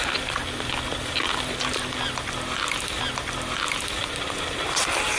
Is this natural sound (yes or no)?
yes